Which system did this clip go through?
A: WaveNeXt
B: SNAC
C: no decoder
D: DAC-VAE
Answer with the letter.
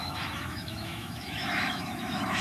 D